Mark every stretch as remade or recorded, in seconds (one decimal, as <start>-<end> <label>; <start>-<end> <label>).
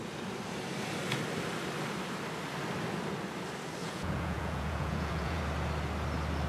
0.0-3.8 recorded; 3.8-5.4 remade; 5.4-6.5 recorded